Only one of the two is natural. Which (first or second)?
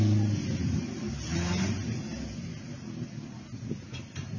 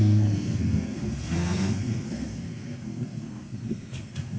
first